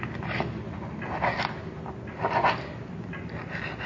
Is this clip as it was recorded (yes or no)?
yes